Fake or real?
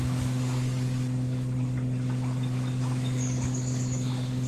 fake